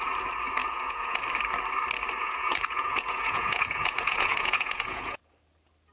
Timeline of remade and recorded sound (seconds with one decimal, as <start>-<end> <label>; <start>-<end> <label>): 0.0-0.6 recorded; 0.6-1.2 remade; 1.2-2.2 recorded; 2.2-5.2 remade; 5.2-5.9 recorded